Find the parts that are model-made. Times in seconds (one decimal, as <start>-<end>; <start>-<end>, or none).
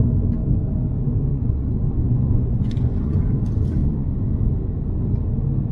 1.3-3.2; 3.8-4.3